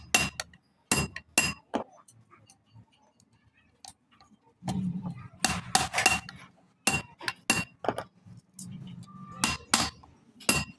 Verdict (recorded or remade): recorded